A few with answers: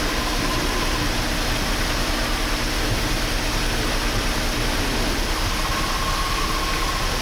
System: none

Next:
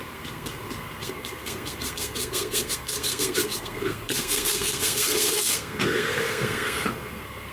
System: codec, SNAC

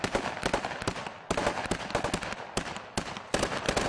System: none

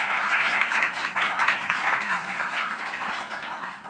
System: codec, SNAC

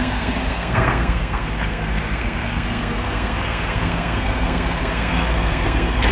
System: codec, SNAC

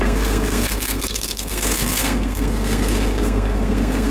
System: codec, SNAC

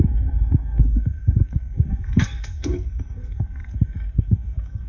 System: codec, SNAC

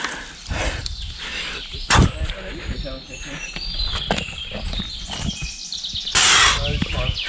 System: none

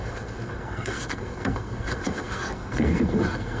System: codec, SNAC